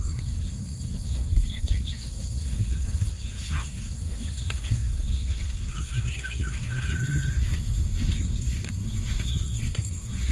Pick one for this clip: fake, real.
fake